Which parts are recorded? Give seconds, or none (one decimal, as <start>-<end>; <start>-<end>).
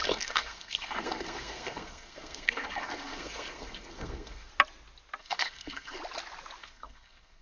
4.5-5.2; 6.0-6.6